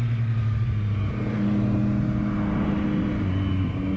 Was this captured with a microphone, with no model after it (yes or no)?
yes